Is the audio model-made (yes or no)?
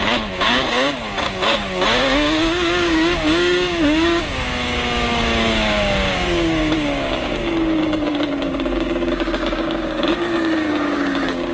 yes